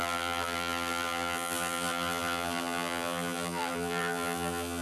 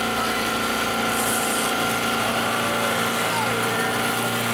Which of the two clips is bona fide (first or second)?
second